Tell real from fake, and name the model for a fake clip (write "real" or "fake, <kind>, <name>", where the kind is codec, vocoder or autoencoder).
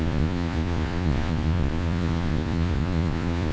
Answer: fake, vocoder, Vocos